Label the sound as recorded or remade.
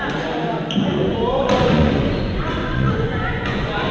remade